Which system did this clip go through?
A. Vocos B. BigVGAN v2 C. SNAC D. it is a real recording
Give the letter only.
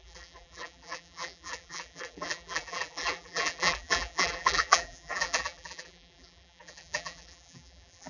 B